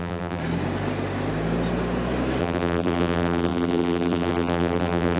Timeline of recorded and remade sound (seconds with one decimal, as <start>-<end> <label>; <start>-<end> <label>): 0.0-0.4 remade; 0.4-2.4 recorded; 2.4-5.2 remade